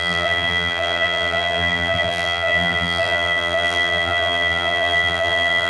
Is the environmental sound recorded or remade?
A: remade